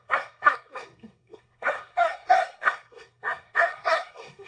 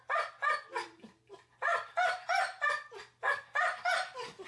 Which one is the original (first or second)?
second